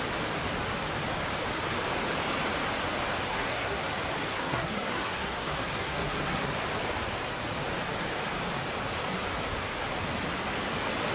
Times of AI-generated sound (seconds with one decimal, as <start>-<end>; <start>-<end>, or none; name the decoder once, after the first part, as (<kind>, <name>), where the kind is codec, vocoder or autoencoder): 3.3-3.8 (codec, SNAC); 4.3-6.5